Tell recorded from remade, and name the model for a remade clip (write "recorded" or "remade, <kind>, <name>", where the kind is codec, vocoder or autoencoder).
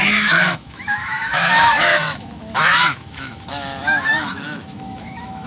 remade, autoencoder, DAC-VAE